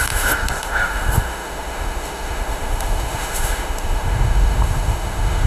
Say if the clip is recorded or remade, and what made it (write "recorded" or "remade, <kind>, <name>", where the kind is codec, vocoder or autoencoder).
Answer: remade, autoencoder, DAC-VAE